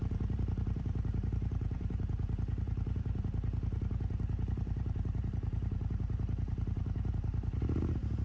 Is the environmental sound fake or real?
fake